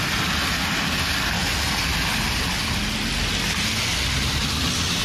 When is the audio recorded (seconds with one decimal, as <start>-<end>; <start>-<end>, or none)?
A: 0.0-5.0